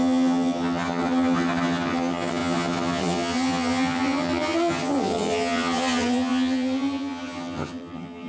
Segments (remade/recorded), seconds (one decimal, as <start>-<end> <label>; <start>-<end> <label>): 0.0-8.3 remade